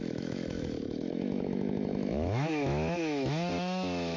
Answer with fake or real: fake